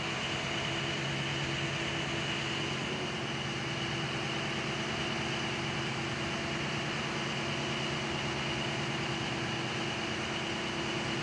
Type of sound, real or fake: real